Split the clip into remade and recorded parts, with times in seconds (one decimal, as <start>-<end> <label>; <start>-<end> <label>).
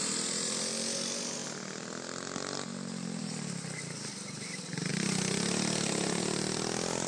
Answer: 0.0-7.1 recorded